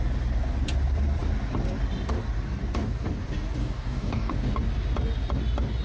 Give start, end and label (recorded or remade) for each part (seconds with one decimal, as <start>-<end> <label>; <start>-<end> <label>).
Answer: 0.0-3.6 recorded; 3.6-4.3 remade; 4.3-5.8 recorded